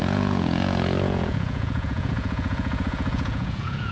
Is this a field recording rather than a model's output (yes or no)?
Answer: no